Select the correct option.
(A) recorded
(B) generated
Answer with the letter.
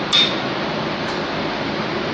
A